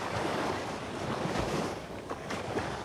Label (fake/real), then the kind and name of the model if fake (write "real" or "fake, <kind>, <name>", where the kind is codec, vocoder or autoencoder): fake, codec, DAC